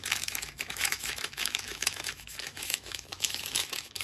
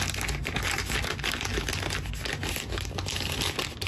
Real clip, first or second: second